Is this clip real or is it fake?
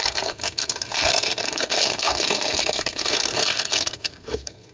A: fake